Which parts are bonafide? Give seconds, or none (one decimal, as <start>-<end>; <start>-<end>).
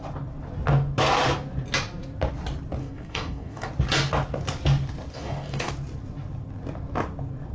0.0-2.8; 3.7-5.1; 5.7-7.5